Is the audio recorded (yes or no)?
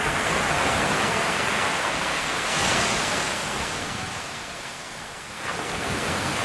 no